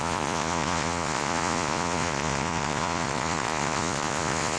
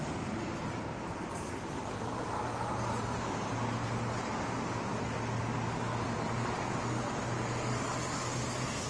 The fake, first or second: first